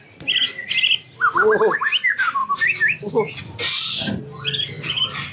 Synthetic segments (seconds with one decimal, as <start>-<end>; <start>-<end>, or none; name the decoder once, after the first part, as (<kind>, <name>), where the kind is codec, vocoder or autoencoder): none